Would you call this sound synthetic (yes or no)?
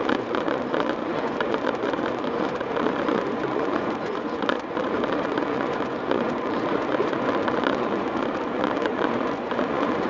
yes